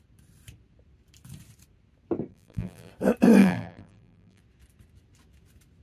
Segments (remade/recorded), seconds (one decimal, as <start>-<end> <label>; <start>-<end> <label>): 0.0-2.3 recorded; 2.3-2.9 remade; 2.9-3.4 recorded; 3.4-4.4 remade; 4.4-5.8 recorded